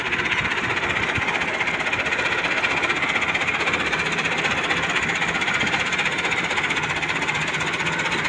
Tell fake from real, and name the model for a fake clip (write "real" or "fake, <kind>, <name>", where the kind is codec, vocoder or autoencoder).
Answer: real